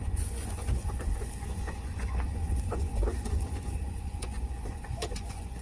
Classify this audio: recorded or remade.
remade